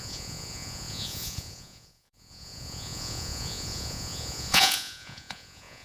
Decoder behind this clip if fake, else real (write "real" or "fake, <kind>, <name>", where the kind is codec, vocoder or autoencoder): fake, vocoder, Vocos